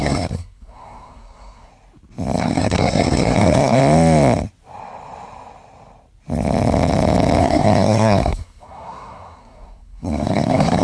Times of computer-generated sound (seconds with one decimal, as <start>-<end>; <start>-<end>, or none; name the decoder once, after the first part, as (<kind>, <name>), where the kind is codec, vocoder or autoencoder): 0.0-1.7 (codec, SNAC); 2.4-3.8; 7.4-10.8